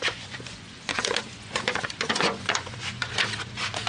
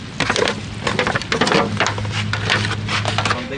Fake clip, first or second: first